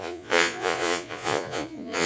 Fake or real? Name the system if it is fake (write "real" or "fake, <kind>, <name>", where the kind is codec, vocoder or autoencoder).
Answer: fake, vocoder, Vocos